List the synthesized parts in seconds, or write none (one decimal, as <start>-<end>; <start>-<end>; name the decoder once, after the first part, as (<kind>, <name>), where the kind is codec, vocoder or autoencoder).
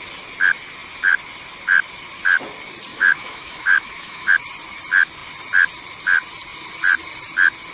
2.9-4.3 (autoencoder, DAC-VAE)